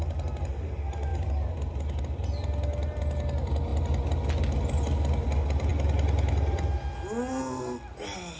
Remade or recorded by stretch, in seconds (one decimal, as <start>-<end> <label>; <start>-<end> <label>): 0.0-8.4 recorded